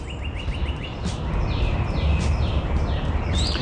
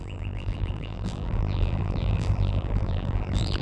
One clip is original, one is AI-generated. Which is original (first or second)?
first